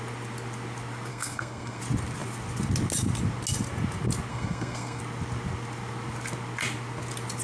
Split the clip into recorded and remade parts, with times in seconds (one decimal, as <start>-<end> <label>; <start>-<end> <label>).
0.0-1.1 recorded; 1.1-1.8 remade; 1.8-4.3 recorded; 4.3-5.0 remade; 5.0-7.4 recorded

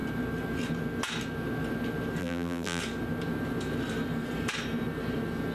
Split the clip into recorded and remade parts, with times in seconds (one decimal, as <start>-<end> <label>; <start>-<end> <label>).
0.0-2.2 recorded; 2.2-2.8 remade; 2.8-5.5 recorded